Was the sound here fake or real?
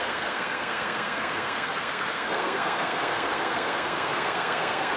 fake